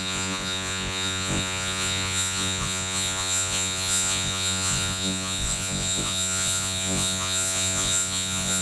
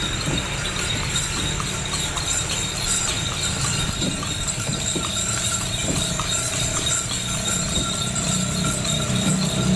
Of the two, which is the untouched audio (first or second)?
second